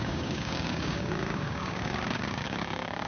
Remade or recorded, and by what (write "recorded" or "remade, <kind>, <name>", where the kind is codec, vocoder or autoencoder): remade, codec, DAC